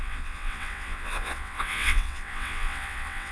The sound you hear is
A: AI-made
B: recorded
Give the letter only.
A